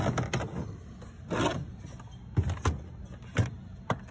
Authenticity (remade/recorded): recorded